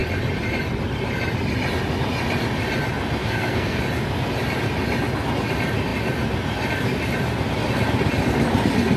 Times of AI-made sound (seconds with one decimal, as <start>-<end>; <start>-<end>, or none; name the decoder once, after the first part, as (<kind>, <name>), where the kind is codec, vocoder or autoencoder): 3.2-3.8 (codec, SNAC)